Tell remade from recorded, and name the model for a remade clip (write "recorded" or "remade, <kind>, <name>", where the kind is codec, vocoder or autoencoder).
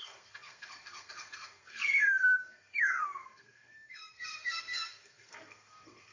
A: remade, codec, SNAC